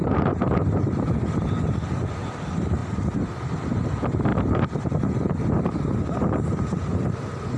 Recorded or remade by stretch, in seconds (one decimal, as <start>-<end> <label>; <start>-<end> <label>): 0.0-1.3 remade; 1.3-2.8 recorded; 2.8-3.4 remade; 3.4-4.3 recorded; 4.3-7.6 remade